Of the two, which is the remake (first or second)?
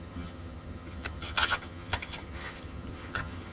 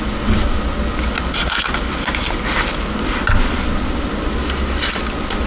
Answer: first